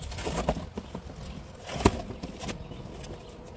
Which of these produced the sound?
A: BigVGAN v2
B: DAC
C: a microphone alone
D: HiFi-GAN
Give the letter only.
C